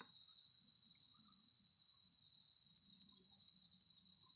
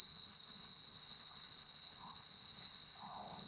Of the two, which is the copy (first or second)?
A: second